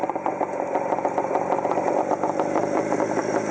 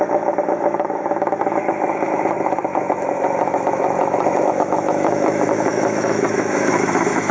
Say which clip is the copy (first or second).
second